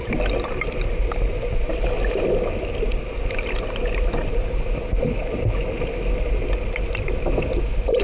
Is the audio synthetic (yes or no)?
no